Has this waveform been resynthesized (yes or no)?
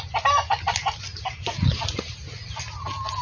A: no